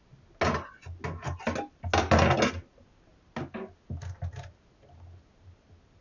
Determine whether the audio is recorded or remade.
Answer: recorded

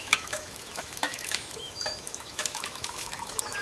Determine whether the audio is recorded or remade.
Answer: remade